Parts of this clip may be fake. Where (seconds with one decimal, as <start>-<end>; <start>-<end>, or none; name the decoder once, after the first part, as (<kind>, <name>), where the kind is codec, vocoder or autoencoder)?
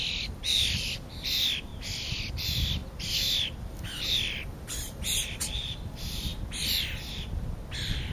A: 0.0-1.7 (vocoder, BigVGAN v2); 2.3-2.8; 3.6-6.3; 7.1-8.1